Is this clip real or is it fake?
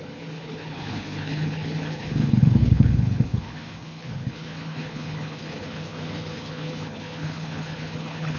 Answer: fake